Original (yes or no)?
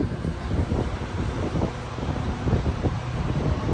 no